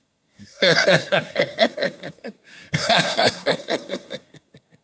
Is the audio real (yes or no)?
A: no